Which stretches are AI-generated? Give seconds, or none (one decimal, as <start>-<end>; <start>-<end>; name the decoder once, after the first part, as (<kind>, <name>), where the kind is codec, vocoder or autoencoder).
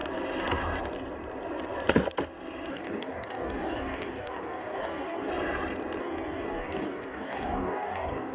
2.7-5.3 (codec, DAC); 6.0-8.3